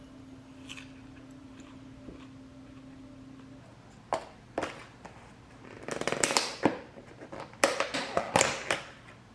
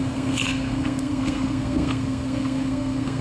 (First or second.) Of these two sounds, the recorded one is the first